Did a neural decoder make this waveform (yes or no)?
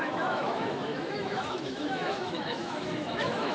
yes